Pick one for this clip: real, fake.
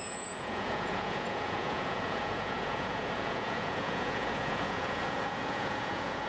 fake